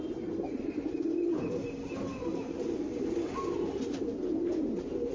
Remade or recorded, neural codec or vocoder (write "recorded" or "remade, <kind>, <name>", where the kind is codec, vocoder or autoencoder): recorded